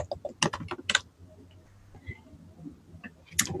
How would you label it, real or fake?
real